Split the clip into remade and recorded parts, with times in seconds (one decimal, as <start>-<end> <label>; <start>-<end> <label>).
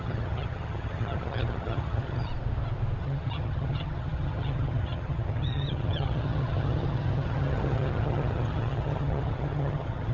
0.0-2.3 remade; 2.3-3.0 recorded; 3.0-10.1 remade